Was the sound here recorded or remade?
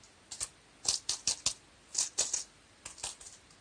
recorded